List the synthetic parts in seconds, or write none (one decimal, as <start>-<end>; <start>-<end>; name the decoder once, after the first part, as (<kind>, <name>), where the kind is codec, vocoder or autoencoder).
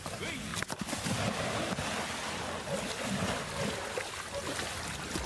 none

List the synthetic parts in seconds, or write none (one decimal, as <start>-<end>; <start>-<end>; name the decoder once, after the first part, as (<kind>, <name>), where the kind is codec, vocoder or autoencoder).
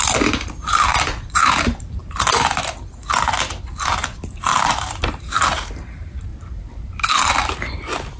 0.0-2.0 (vocoder, BigVGAN v2); 3.9-8.2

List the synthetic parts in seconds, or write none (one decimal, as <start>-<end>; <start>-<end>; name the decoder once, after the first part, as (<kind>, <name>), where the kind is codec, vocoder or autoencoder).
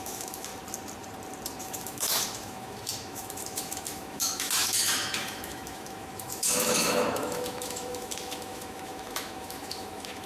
0.0-0.5 (autoencoder, DAC-VAE); 1.6-10.3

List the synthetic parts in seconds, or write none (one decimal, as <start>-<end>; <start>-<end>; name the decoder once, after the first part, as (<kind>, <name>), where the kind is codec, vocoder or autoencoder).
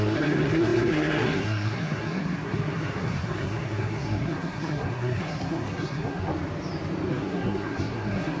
0.0-6.3 (codec, SNAC); 7.1-8.4